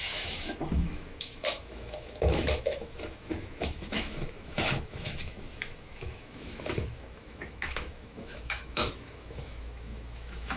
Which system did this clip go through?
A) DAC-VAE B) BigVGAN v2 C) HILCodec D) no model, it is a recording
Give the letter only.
A